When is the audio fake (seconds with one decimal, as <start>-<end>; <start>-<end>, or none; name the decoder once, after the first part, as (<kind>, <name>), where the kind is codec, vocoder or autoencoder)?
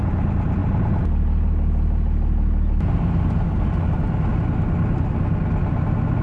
none